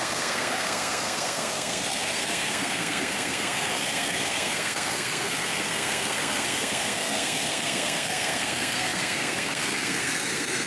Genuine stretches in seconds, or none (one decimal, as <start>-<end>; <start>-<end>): none